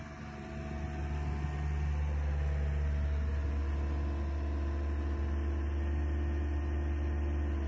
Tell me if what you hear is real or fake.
real